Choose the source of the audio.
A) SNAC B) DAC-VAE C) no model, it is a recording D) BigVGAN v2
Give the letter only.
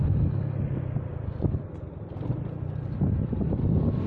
C